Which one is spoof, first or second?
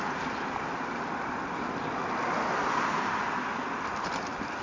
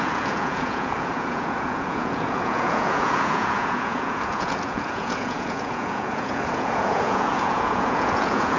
second